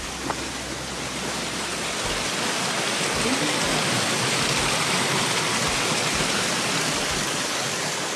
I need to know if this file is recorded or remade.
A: recorded